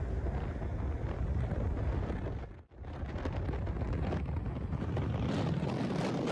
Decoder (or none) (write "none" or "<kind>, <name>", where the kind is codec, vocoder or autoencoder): none